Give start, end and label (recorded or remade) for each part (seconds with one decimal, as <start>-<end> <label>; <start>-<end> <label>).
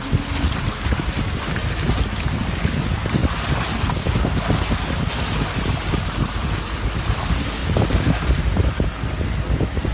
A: 0.0-7.6 recorded; 7.6-8.2 remade; 8.2-9.9 recorded